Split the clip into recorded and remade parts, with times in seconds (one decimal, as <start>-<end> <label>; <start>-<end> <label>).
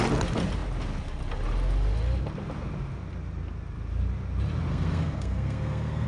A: 0.0-4.7 recorded; 4.7-6.1 remade